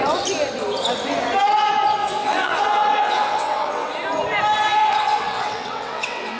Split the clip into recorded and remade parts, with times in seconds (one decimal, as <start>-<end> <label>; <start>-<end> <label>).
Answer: 0.0-2.0 recorded; 2.0-3.9 remade; 3.9-4.8 recorded; 4.8-6.4 remade